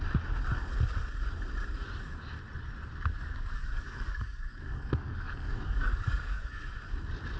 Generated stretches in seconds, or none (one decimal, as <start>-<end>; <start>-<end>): 3.2-6.6